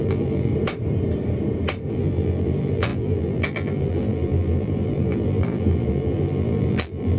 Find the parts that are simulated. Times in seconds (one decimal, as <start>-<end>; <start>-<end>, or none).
0.0-0.5; 1.9-7.2